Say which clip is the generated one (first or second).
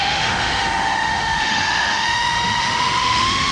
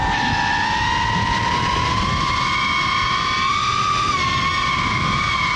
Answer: first